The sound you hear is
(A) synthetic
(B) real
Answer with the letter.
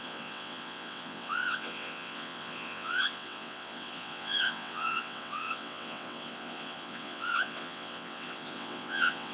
A